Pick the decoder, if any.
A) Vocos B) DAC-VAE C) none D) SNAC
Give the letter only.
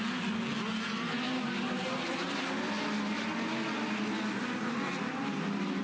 C